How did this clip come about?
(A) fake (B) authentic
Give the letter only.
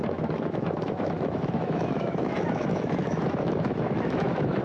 A